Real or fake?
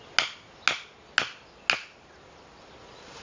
real